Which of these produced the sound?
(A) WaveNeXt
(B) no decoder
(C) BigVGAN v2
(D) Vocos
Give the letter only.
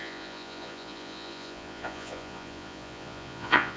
D